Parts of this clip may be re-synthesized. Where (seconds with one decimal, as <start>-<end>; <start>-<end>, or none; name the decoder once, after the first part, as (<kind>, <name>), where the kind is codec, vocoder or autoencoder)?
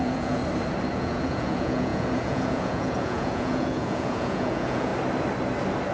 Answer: 0.0-0.4 (vocoder, Vocos); 0.9-4.9